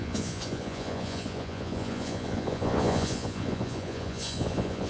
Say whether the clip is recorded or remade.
remade